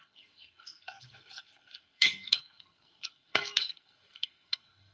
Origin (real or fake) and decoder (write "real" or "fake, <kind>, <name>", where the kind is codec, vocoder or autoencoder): fake, codec, SNAC